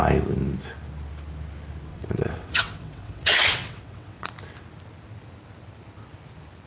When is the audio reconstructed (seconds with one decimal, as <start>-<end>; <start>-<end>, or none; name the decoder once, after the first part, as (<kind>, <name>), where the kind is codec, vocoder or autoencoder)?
1.9-4.3 (vocoder, WaveNeXt)